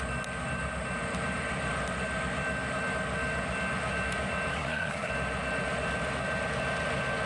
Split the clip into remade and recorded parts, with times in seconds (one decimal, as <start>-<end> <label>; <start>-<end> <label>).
0.0-4.5 recorded; 4.5-5.1 remade; 5.1-7.3 recorded